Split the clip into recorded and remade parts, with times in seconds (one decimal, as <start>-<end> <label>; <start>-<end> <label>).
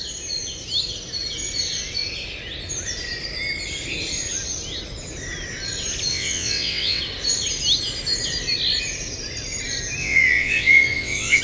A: 0.0-6.1 recorded; 6.1-7.0 remade; 7.0-10.0 recorded; 10.0-11.4 remade